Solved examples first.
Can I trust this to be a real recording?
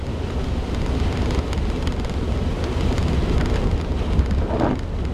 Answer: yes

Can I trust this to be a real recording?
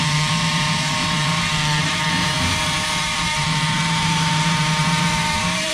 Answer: no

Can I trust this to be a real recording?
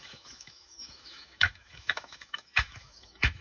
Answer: no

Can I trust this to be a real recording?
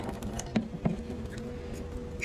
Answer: yes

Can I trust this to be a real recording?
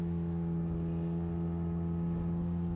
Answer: yes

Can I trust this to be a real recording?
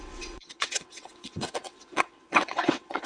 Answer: no